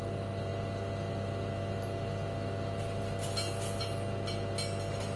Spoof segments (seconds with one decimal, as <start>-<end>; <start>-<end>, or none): none